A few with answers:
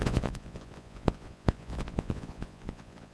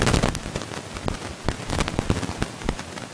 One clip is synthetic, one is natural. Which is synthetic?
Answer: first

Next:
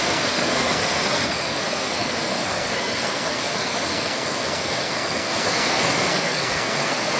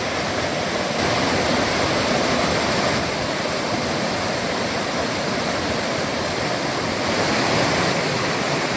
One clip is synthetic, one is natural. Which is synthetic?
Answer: first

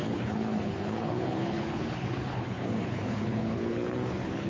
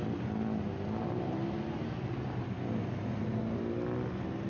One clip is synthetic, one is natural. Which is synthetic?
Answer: first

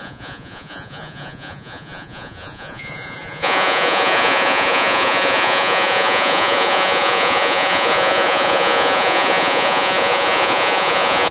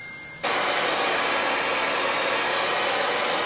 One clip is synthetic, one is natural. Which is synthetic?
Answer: first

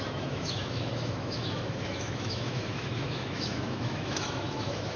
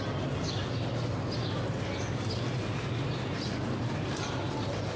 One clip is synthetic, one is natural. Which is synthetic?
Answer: first